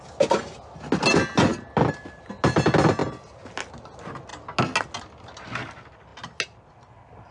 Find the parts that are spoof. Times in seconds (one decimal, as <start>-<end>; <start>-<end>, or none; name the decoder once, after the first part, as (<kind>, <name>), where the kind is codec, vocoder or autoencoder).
none